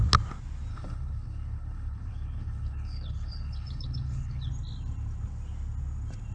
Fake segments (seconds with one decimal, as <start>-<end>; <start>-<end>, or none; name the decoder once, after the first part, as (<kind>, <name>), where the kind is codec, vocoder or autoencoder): 0.7-4.5 (codec, HILCodec)

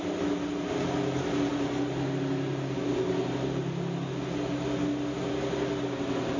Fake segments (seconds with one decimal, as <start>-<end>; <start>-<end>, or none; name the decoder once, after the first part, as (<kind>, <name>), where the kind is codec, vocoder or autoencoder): none